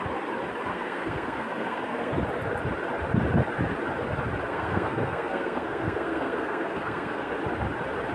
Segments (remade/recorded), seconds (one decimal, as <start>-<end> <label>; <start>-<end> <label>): 0.0-0.7 recorded; 0.7-2.1 remade; 2.1-4.5 recorded; 4.5-7.3 remade; 7.3-8.1 recorded